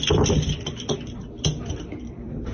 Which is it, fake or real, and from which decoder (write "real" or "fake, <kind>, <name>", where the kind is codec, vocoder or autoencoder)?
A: fake, vocoder, BigVGAN v2